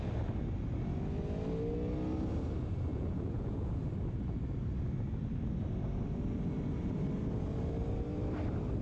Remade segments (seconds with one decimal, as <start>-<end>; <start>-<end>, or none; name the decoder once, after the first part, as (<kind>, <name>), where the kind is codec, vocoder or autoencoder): 2.9-3.8 (vocoder, Vocos)